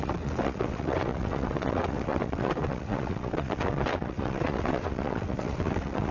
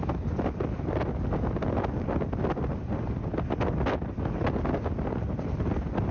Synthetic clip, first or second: first